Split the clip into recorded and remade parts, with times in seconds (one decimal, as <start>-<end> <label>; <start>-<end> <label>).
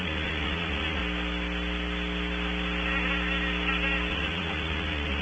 0.0-1.0 remade; 1.0-4.1 recorded; 4.1-5.2 remade